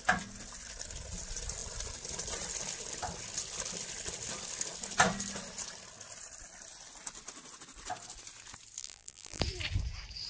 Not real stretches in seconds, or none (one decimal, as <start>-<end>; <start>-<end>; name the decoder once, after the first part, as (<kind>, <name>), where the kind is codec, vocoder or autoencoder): 8.8-9.4 (vocoder, BigVGAN v2)